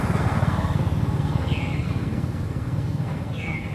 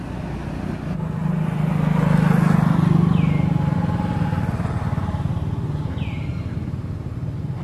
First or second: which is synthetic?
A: first